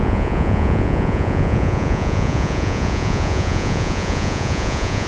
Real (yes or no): no